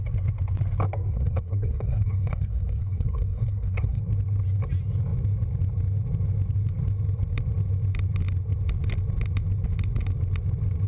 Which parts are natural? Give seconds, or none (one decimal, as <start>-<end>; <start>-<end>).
0.0-1.1; 4.0-10.9